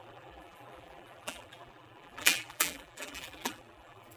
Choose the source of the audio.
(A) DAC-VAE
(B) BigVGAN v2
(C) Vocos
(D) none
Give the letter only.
B